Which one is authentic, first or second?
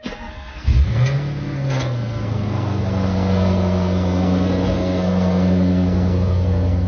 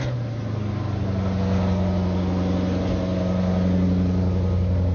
second